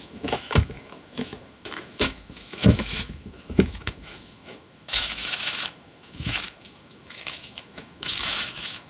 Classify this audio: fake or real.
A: fake